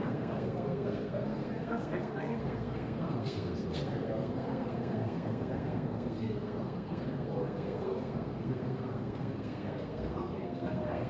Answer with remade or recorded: remade